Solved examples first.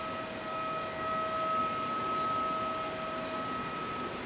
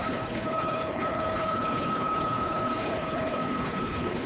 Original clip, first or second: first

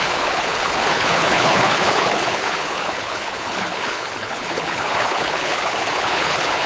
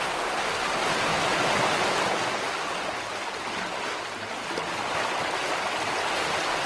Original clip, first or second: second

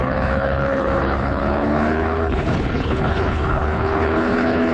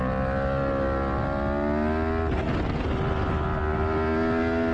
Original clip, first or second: second